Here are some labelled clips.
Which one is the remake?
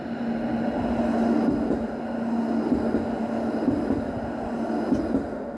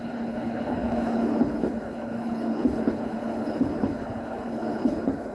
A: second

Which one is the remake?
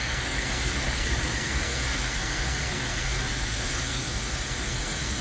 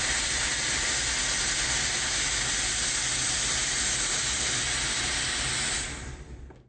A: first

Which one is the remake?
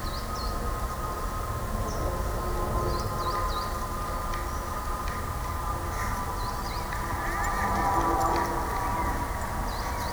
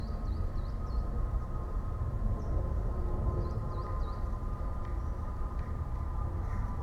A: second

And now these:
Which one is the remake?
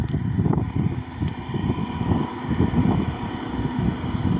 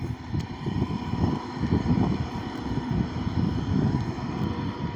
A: second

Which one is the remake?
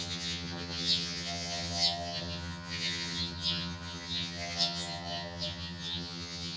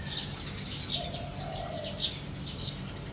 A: first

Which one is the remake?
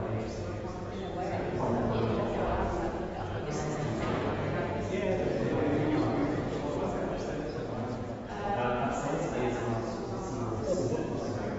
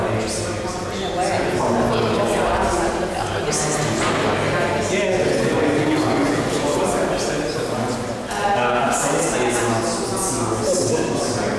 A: first